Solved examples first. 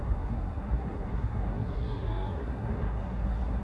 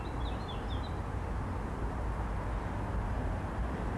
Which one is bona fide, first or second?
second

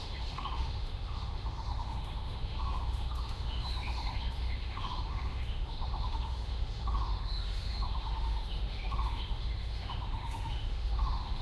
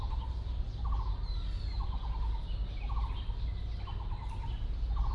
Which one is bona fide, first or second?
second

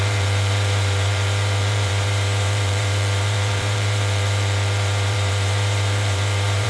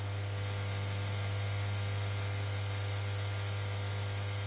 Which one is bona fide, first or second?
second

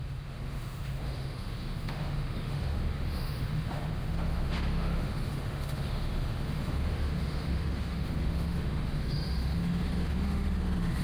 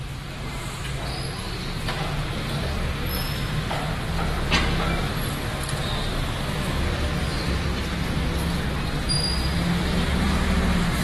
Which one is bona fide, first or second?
second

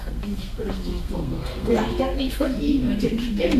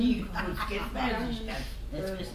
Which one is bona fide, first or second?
second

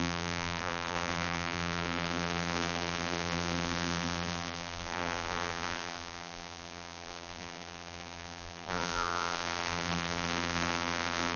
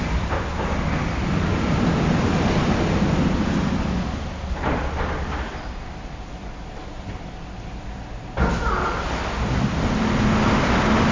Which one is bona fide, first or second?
second